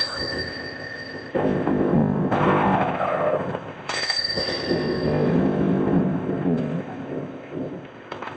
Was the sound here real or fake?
fake